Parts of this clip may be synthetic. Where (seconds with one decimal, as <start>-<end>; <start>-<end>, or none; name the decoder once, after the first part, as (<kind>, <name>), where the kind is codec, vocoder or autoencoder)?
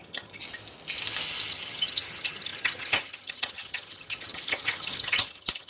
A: 0.0-0.4 (vocoder, HiFi-GAN); 1.5-5.7